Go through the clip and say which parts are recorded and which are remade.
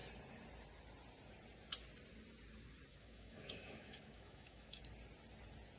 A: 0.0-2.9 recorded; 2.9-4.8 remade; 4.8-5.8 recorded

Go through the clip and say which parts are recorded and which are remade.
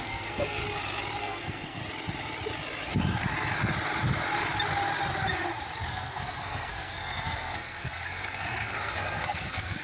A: 0.0-0.6 remade; 0.6-1.2 recorded; 1.2-1.8 remade; 1.8-5.9 recorded; 5.9-9.8 remade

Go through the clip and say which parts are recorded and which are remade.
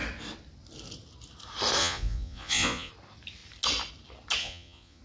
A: 0.0-1.8 recorded; 1.8-2.9 remade; 2.9-4.4 recorded; 4.4-5.0 remade